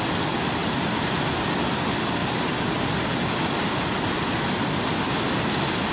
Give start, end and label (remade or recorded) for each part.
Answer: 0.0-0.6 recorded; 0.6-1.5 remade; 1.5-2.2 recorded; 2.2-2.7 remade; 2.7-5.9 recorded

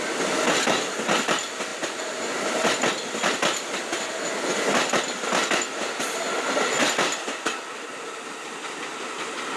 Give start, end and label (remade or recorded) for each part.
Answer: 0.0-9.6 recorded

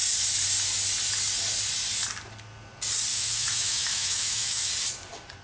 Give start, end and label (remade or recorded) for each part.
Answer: 0.0-3.1 recorded; 3.1-4.7 remade; 4.7-5.4 recorded